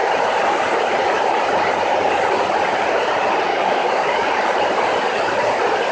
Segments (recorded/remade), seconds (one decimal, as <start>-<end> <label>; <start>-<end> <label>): 0.0-3.5 recorded; 3.5-4.3 remade; 4.3-5.9 recorded